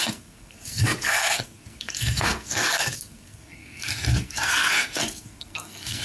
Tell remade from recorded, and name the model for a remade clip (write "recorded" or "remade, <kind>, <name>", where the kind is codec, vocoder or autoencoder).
remade, codec, SNAC